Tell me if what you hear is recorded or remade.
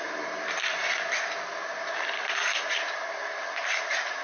recorded